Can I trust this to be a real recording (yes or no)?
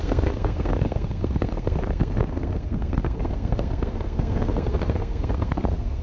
no